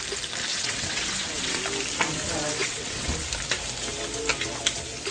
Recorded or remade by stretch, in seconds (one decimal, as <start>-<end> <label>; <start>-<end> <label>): 0.0-0.5 recorded; 0.5-1.6 remade; 1.6-2.6 recorded; 2.6-3.1 remade; 3.1-5.1 recorded